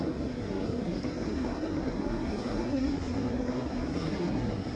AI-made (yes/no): yes